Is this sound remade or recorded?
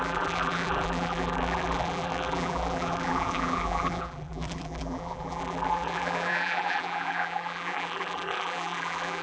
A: remade